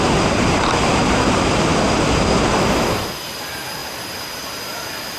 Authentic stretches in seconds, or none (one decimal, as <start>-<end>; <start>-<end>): 0.0-5.2